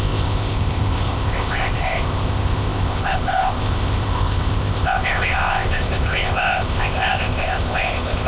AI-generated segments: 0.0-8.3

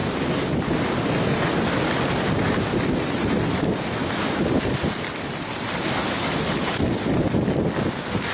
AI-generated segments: none

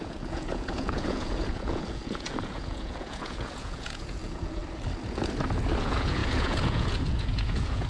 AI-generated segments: 0.0-4.6; 5.8-7.9

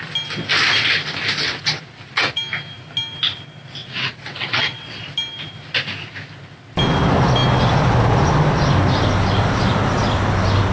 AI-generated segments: 3.8-5.0

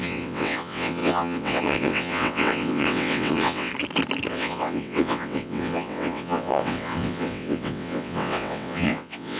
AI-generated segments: 0.0-3.7; 4.3-9.4

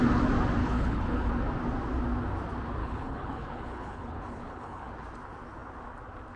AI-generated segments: 0.6-1.3; 2.8-4.9

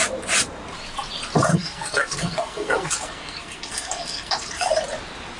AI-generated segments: 1.5-4.7

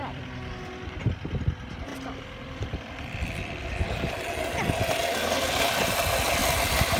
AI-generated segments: 0.0-0.5; 1.9-4.3; 6.4-7.0